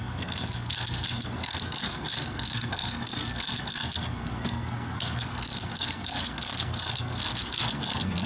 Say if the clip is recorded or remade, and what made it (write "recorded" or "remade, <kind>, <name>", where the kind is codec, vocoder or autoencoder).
remade, codec, SNAC